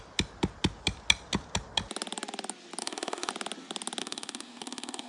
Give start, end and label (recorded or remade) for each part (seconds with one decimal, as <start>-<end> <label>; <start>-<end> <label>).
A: 0.0-2.8 recorded; 2.8-3.3 remade; 3.3-4.0 recorded; 4.0-5.1 remade